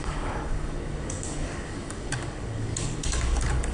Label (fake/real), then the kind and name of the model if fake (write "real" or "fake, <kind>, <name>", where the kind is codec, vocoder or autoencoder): fake, codec, DAC